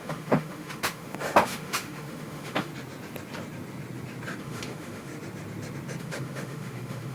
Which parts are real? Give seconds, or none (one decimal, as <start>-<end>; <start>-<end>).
2.7-4.4; 5.1-6.0